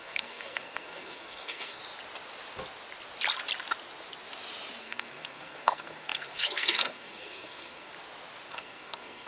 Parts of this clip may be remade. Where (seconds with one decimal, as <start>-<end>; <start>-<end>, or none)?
0.0-1.8; 4.8-7.9; 8.5-9.3